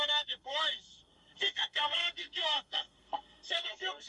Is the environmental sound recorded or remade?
remade